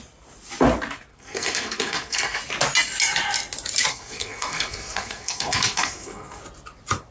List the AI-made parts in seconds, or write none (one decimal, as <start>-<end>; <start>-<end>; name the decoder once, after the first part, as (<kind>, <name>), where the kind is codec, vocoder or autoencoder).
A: 1.1-2.4 (codec, SNAC); 3.9-6.4